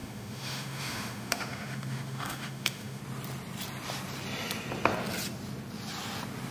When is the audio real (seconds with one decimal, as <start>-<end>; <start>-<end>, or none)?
3.0-6.5